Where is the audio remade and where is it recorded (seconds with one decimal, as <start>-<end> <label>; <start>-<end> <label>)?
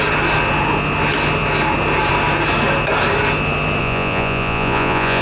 0.0-3.8 recorded; 3.8-5.2 remade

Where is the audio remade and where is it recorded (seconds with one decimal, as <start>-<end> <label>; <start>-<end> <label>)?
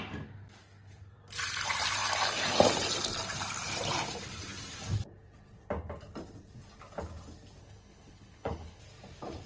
0.0-7.6 recorded; 7.6-8.8 remade; 8.8-9.5 recorded